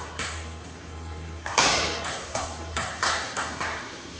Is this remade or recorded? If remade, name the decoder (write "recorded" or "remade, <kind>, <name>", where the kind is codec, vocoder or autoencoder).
remade, codec, SNAC